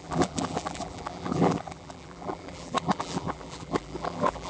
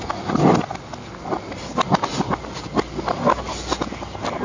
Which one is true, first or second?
second